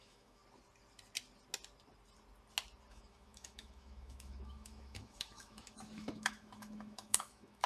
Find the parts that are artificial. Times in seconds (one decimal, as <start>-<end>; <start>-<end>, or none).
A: 0.0-0.4; 2.9-7.7